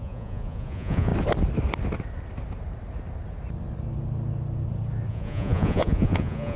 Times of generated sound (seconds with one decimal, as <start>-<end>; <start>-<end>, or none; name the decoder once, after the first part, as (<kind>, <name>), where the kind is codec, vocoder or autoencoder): 0.0-1.1 (vocoder, Vocos); 5.1-6.6